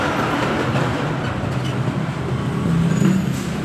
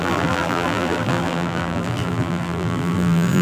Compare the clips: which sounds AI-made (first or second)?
second